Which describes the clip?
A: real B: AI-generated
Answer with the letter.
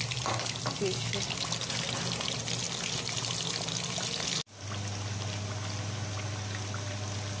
A